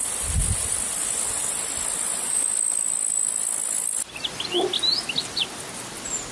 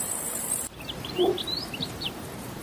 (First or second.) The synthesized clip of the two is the second